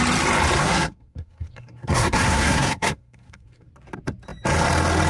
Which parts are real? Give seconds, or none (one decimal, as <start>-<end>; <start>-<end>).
0.0-0.6; 3.7-5.1